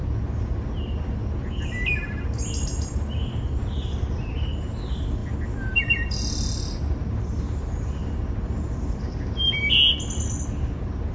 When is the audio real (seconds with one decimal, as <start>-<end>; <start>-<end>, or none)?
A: 0.0-11.1

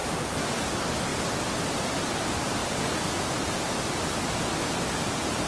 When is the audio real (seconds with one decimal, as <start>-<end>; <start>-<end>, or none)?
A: 0.0-5.5

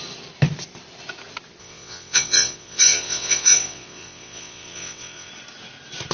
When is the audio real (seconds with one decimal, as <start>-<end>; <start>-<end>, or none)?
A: 0.0-1.6; 5.3-6.1

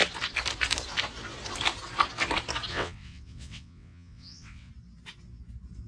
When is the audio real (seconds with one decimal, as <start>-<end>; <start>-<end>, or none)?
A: 0.0-2.7; 4.7-5.9

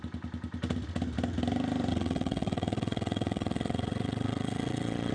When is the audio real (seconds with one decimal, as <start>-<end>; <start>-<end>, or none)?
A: 0.0-1.9

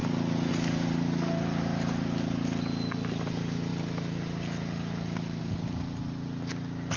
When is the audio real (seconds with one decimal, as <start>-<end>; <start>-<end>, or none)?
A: 0.0-7.0

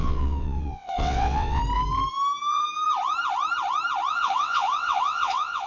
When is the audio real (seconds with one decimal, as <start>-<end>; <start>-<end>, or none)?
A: 1.6-4.1

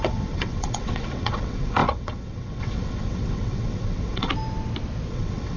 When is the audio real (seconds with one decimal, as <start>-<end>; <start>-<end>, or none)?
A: 4.3-5.1